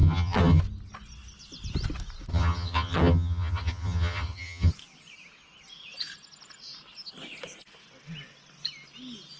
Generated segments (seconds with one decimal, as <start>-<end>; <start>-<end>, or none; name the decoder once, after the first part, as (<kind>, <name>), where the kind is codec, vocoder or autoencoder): 0.0-0.6 (vocoder, HiFi-GAN); 2.3-4.7